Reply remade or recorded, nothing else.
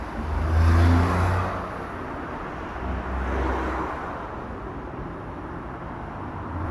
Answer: recorded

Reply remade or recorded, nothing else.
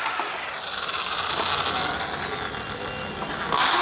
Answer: recorded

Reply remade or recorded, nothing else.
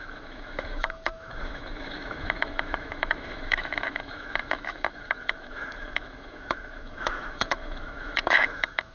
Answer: remade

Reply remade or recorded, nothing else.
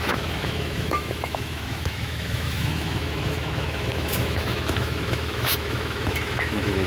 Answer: remade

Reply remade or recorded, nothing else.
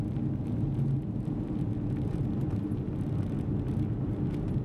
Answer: recorded